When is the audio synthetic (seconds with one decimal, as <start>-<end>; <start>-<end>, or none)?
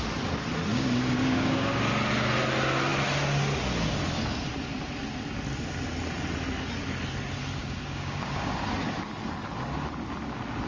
0.7-1.8; 7.6-8.5